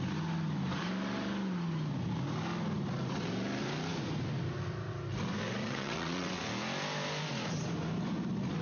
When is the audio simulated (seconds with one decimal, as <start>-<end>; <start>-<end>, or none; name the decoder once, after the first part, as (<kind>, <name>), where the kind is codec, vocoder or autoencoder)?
5.6-6.4 (vocoder, WaveNeXt)